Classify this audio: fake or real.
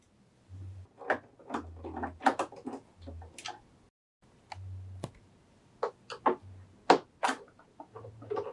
real